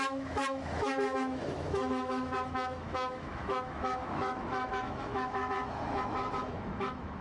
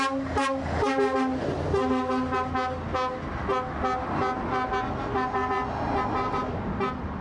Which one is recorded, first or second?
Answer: second